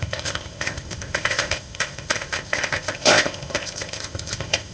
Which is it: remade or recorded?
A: remade